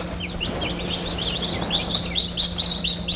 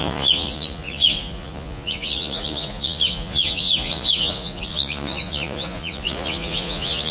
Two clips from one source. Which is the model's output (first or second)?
second